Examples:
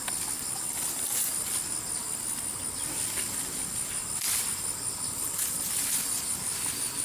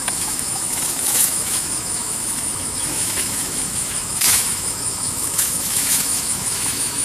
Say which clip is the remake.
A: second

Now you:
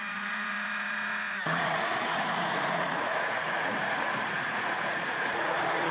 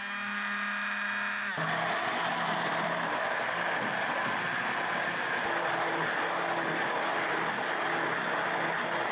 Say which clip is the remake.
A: first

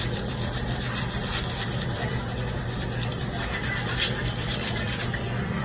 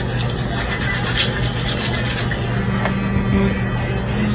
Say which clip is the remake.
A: first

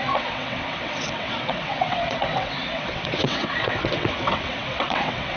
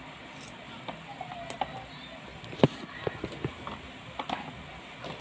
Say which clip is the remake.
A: first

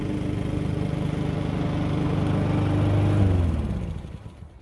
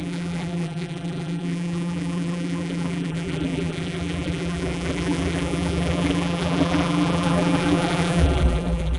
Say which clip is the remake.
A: second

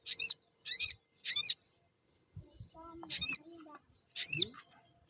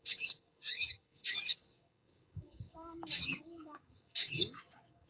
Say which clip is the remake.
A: second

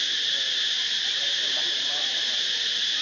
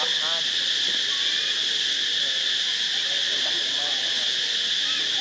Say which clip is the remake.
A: first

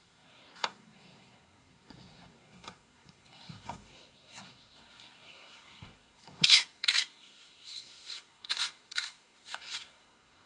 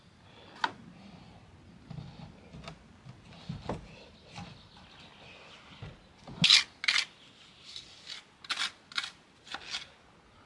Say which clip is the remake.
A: first